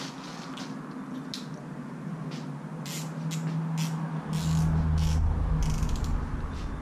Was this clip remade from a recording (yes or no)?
no